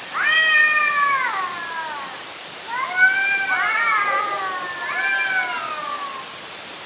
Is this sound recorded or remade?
recorded